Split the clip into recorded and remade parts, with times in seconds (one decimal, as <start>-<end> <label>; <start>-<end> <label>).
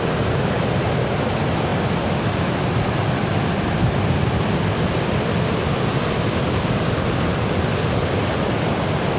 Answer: 0.0-9.2 recorded